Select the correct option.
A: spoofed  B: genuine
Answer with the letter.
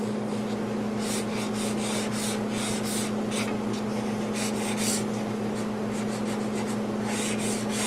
B